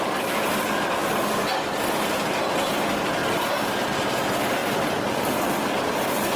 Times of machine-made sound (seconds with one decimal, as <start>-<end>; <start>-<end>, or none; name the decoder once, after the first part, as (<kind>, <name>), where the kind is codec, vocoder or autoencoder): none